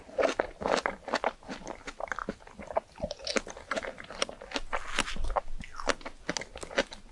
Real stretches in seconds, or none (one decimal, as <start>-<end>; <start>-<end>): 0.0-7.1